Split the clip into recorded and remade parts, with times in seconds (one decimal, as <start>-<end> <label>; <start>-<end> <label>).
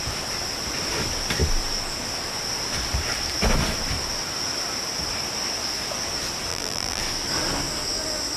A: 0.0-6.5 recorded; 6.5-7.0 remade; 7.0-8.4 recorded